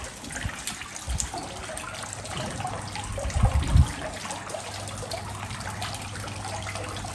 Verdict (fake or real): real